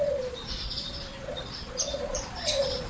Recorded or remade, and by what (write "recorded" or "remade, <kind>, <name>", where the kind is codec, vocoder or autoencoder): remade, vocoder, Vocos